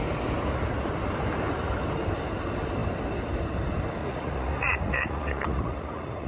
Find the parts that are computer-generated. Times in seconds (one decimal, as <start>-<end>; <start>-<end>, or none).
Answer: 4.0-6.3

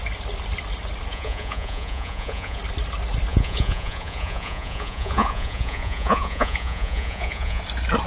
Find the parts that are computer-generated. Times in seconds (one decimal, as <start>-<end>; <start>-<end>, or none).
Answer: 1.1-2.6; 3.3-7.6

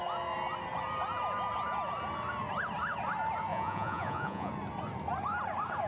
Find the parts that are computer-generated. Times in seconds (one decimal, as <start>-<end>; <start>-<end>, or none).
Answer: 3.5-4.5

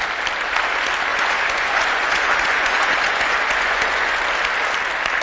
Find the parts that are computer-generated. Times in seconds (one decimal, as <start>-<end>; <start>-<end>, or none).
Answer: 1.1-4.2

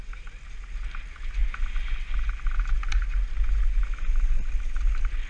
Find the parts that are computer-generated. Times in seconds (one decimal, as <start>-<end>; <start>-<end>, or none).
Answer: none